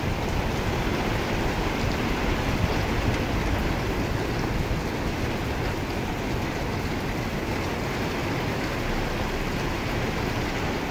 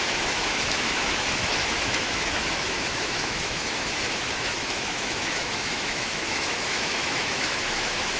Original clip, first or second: first